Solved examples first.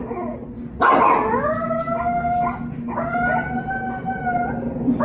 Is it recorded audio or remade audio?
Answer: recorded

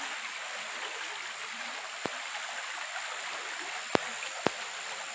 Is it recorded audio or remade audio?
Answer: recorded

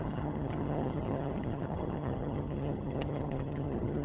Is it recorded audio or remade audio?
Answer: remade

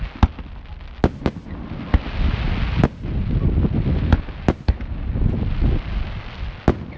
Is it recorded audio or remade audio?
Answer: recorded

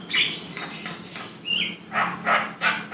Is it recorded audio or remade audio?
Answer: recorded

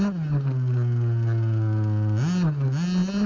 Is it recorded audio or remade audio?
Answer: recorded